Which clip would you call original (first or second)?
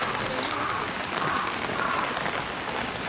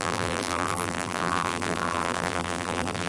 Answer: first